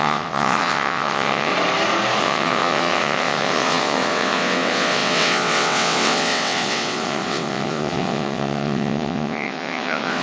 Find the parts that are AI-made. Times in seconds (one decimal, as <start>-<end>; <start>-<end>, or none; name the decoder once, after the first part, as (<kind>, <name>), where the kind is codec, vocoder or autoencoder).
0.0-1.5 (vocoder, WaveNeXt); 2.2-10.2